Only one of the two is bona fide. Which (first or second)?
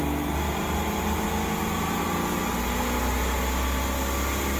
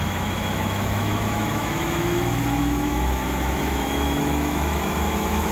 first